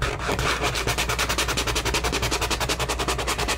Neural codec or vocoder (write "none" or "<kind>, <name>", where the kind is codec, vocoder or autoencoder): none